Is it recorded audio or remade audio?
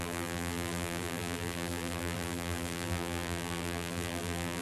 remade